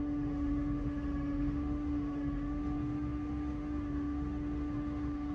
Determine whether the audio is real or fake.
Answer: fake